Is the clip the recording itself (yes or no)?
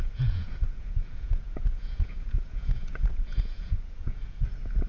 no